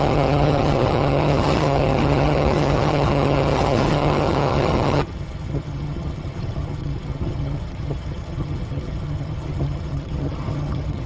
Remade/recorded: remade